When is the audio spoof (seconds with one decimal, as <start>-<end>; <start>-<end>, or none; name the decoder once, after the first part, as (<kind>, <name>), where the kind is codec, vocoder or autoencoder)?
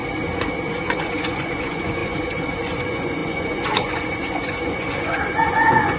0.7-6.0 (vocoder, Vocos)